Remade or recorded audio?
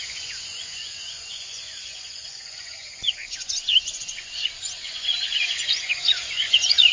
remade